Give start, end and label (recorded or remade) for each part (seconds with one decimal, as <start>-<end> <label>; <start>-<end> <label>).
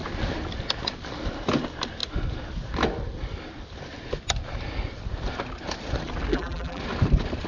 0.0-6.3 recorded; 6.3-6.8 remade; 6.8-7.5 recorded